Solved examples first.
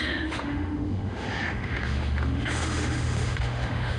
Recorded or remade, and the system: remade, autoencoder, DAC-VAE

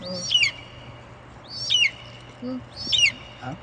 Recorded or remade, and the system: recorded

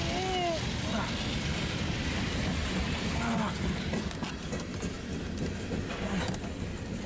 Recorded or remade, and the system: recorded